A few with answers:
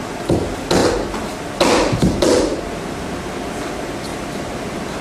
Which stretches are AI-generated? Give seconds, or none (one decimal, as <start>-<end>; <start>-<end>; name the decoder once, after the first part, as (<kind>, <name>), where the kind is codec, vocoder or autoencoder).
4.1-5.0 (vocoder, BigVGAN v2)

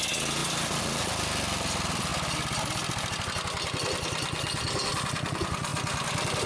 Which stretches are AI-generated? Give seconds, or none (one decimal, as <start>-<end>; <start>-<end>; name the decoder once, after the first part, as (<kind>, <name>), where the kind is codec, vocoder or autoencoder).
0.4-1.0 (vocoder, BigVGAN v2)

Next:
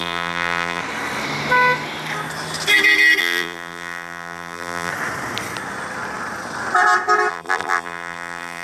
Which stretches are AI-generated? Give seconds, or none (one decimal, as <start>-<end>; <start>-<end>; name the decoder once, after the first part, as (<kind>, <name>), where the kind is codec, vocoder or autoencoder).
0.0-0.8 (vocoder, BigVGAN v2); 3.2-4.9; 7.3-8.6

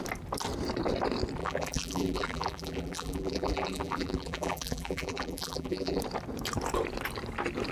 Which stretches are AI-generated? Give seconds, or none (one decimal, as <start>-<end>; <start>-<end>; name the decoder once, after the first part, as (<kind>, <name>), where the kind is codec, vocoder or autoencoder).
1.4-6.0 (vocoder, BigVGAN v2)

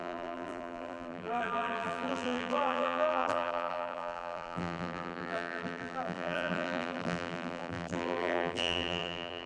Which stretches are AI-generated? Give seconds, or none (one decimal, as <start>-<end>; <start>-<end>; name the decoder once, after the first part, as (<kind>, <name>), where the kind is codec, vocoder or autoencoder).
0.0-9.5 (vocoder, BigVGAN v2)

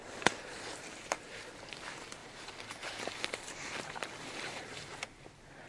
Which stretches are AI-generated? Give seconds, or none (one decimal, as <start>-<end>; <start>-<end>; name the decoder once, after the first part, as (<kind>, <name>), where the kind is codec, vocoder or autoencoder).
0.0-1.4 (vocoder, BigVGAN v2); 2.2-5.0

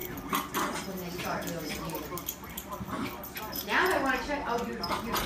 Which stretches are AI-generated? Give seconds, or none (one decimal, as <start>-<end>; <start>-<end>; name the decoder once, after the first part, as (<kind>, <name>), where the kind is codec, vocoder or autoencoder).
none

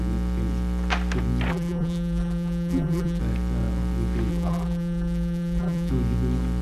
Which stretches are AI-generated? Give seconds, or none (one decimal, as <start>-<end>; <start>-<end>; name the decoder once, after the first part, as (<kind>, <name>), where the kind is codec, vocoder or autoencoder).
1.5-3.2 (vocoder, BigVGAN v2); 4.3-5.9